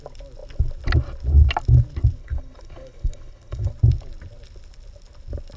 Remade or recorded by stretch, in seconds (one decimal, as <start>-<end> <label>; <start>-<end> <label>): 0.0-2.2 recorded; 2.2-3.7 remade; 3.7-5.6 recorded